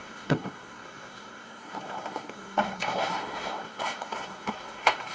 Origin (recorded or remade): remade